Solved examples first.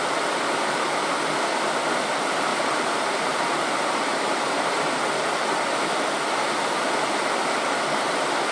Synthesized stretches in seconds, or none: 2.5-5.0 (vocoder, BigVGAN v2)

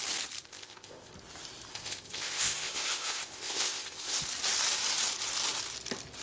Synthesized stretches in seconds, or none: 0.5-1.1 (codec, ZipCodec); 1.7-4.2

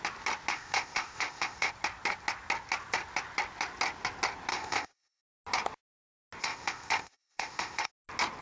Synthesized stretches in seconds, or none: 0.5-1.7 (codec, ZipCodec); 4.5-5.2; 6.4-7.9

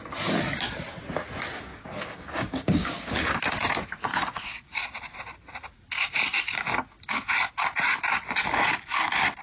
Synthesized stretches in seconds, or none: 1.7-3.4 (codec, DAC); 4.1-4.8